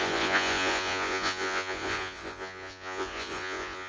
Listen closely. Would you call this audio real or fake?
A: fake